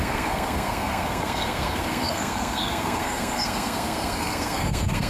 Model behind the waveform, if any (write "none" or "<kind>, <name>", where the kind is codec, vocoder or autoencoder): codec, SNAC